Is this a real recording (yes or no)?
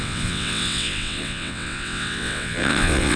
no